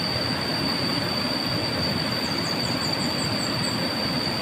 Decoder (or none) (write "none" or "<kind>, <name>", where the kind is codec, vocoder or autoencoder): vocoder, BigVGAN v2